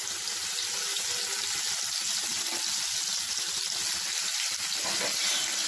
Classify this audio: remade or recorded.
recorded